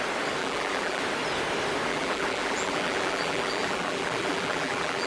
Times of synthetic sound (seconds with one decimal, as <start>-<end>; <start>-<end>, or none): 0.4-1.0; 1.9-5.1